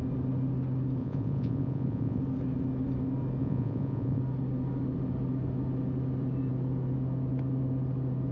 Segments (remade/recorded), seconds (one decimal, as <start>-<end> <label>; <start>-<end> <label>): 0.0-1.0 recorded; 1.0-2.2 remade; 2.2-3.4 recorded; 3.4-4.2 remade; 4.2-8.3 recorded